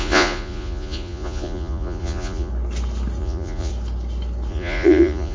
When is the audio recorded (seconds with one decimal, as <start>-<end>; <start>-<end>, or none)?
2.5-3.2; 3.7-4.5